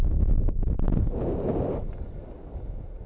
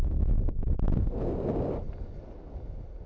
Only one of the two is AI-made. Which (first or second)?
first